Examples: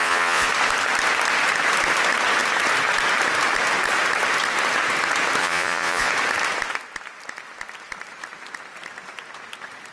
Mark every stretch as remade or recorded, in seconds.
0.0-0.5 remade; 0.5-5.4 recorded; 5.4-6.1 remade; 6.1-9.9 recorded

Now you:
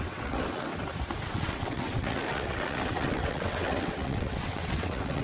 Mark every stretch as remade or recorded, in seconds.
0.0-0.7 remade; 0.7-1.2 recorded; 1.2-5.2 remade

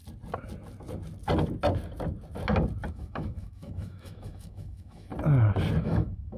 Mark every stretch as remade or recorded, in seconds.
0.0-2.9 recorded; 2.9-5.1 remade; 5.1-5.8 recorded; 5.8-6.4 remade

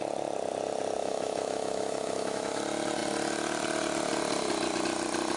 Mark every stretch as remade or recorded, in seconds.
0.0-1.0 recorded; 1.0-2.6 remade; 2.6-5.4 recorded

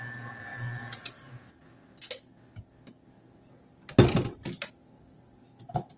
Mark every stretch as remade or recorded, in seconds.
0.0-6.0 recorded